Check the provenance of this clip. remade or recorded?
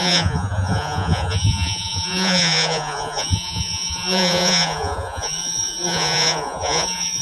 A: remade